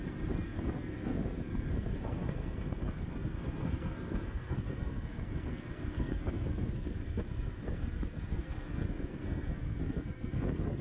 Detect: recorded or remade remade